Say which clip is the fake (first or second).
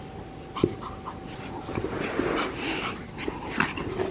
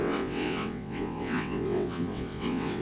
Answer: second